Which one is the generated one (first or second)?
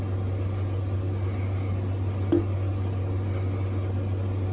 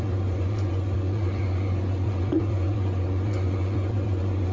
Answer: second